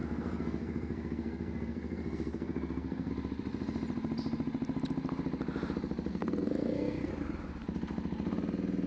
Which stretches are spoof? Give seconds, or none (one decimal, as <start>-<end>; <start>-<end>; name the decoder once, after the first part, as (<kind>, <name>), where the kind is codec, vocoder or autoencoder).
0.0-3.1 (codec, SNAC); 6.1-7.1

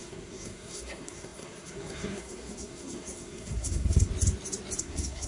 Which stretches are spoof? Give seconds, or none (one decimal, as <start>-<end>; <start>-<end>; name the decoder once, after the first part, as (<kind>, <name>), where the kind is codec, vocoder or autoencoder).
0.0-4.1 (codec, SNAC); 4.8-5.3